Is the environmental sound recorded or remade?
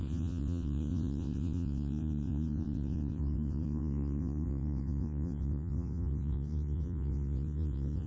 remade